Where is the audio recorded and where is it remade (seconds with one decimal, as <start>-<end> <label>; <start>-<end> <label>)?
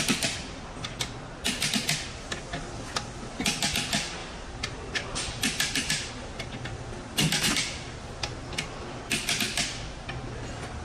0.0-4.2 recorded; 4.2-6.1 remade; 6.1-10.8 recorded